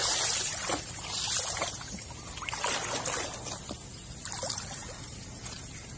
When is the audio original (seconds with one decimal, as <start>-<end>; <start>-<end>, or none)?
0.0-3.6